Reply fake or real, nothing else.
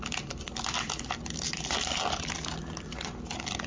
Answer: fake